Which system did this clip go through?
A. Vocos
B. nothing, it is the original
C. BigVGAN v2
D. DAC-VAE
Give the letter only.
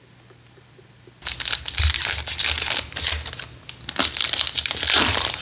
B